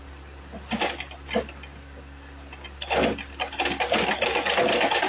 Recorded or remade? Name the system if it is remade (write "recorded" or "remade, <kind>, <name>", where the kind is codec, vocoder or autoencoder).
recorded